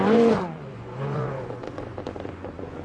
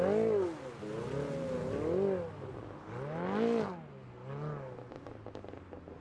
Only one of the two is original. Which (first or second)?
second